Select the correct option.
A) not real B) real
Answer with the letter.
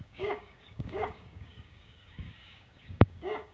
A